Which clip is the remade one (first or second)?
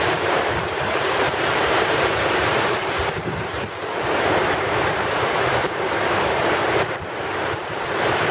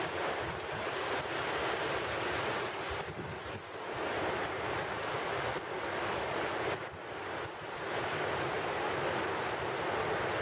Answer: first